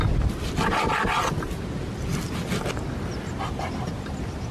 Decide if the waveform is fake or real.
real